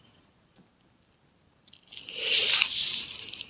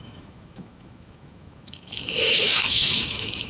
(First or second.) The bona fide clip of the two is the first